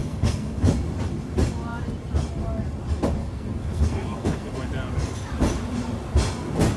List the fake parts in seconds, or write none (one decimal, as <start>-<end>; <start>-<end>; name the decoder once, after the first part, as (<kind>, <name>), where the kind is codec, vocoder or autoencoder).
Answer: 0.0-0.7 (codec, SNAC); 3.2-4.5